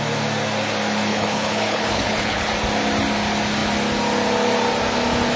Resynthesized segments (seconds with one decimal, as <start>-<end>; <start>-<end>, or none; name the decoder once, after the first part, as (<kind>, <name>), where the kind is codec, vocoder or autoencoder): 1.1-2.5 (codec, HILCodec)